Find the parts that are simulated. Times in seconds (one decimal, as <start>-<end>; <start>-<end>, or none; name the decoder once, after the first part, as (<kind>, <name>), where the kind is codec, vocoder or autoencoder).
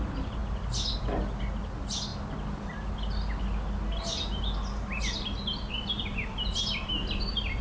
none